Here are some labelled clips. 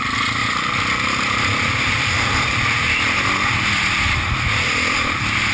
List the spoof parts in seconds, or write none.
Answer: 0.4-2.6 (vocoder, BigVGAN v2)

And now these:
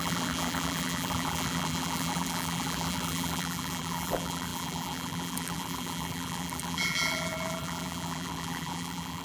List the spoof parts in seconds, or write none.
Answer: 0.0-9.2 (vocoder, BigVGAN v2)

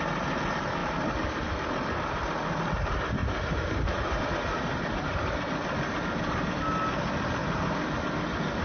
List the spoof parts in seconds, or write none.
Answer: 3.2-4.2 (vocoder, BigVGAN v2); 5.1-5.9; 7.4-8.0

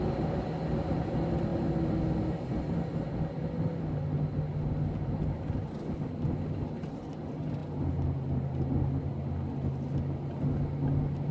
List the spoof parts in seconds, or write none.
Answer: none

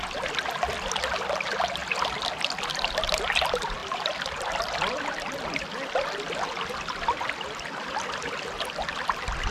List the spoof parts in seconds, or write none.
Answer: 1.8-2.3 (vocoder, BigVGAN v2); 3.8-6.3

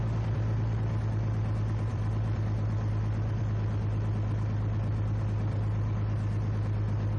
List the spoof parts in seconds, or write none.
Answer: 1.9-3.4 (vocoder, BigVGAN v2)